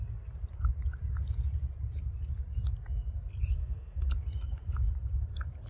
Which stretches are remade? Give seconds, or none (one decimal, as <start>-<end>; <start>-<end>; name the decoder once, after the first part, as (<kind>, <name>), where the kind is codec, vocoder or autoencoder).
3.6-4.1 (codec, SNAC)